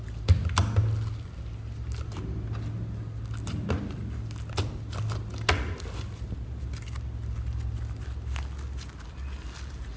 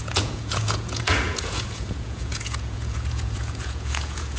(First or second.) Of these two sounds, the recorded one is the first